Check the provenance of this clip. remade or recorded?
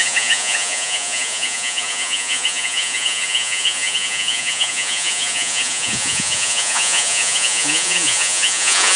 remade